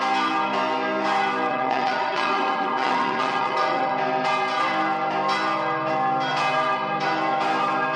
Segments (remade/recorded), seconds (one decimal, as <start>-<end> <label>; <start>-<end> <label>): 0.0-1.5 recorded; 1.5-3.9 remade; 3.9-8.0 recorded